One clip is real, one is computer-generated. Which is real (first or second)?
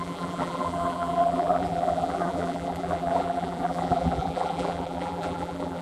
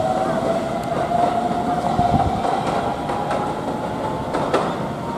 second